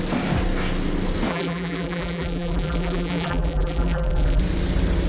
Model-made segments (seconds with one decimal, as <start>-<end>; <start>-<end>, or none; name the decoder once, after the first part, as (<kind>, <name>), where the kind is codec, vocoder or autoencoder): 1.3-4.4 (vocoder, BigVGAN v2)

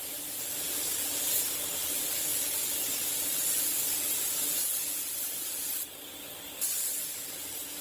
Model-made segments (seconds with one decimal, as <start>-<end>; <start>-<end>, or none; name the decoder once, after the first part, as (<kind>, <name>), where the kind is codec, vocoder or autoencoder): none

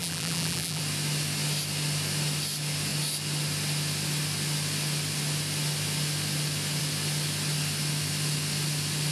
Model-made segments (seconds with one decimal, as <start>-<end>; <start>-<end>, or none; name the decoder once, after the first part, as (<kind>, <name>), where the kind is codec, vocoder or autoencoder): 0.0-0.8 (vocoder, BigVGAN v2)

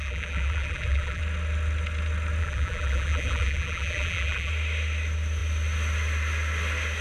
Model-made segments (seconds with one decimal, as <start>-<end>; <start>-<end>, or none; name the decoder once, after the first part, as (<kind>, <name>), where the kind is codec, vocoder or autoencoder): 0.0-1.2 (vocoder, BigVGAN v2); 2.4-4.5

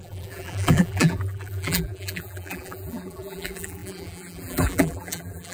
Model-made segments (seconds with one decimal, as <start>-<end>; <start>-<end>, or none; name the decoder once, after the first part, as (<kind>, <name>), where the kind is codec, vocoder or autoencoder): 0.0-5.5 (vocoder, BigVGAN v2)

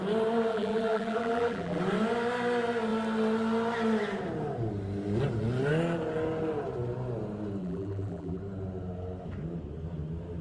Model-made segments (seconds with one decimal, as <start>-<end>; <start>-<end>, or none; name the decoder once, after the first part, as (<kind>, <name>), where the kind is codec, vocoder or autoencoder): 0.5-1.8 (vocoder, BigVGAN v2); 7.6-8.4

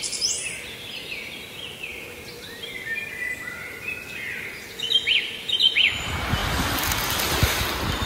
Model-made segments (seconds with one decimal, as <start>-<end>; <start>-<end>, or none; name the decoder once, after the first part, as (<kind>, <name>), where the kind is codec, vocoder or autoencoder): 1.9-5.7 (vocoder, BigVGAN v2); 6.4-7.1